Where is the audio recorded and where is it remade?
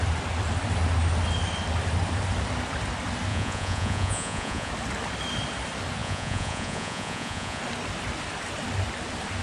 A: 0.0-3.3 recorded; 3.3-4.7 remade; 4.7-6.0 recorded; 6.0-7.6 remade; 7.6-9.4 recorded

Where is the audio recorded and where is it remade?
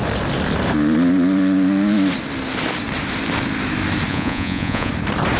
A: 0.0-4.1 recorded; 4.1-4.9 remade; 4.9-5.4 recorded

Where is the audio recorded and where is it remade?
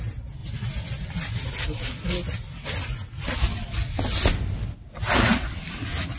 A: 0.0-6.2 recorded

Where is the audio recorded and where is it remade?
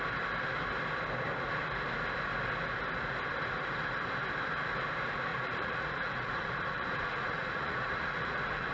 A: 0.0-5.3 recorded; 5.3-8.7 remade